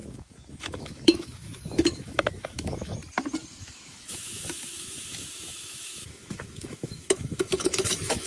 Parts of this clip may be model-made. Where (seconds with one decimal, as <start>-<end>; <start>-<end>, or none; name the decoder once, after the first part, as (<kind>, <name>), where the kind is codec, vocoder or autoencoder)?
0.0-3.0 (autoencoder, DAC-VAE); 3.6-8.3